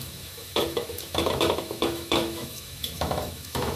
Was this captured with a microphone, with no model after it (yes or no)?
no